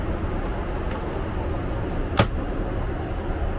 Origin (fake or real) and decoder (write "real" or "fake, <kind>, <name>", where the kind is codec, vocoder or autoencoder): real